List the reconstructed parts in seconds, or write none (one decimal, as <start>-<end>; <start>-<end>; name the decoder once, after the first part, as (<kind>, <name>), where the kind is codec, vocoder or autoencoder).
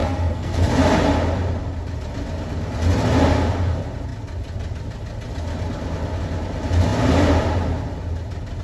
0.0-0.7 (codec, SNAC)